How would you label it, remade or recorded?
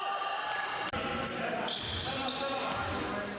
recorded